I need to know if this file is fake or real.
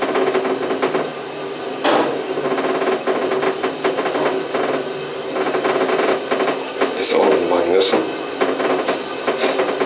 real